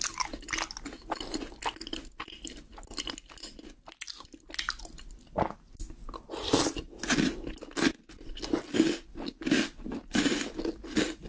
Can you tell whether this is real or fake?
real